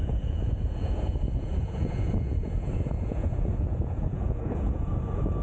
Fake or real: fake